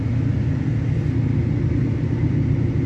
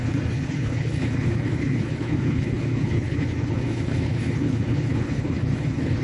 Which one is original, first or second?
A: first